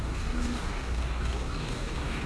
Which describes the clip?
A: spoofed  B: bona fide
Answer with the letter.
A